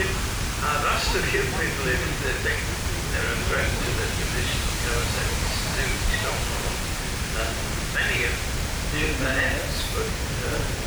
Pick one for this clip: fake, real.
fake